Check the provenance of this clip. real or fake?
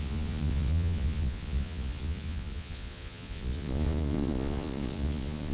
fake